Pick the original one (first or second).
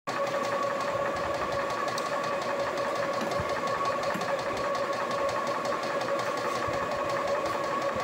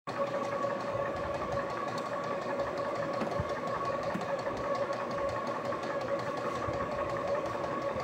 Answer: first